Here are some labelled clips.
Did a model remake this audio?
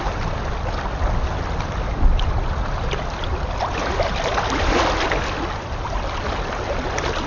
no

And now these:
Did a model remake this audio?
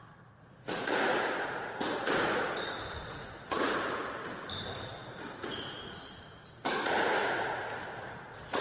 yes